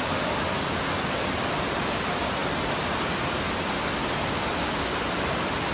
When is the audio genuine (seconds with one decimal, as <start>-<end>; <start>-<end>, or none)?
0.0-5.7